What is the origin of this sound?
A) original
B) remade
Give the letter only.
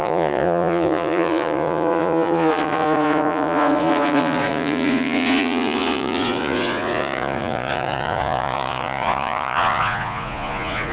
B